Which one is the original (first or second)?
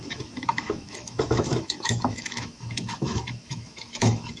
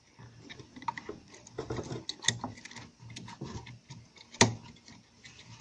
second